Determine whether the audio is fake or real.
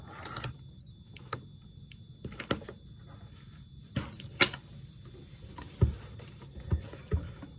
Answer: real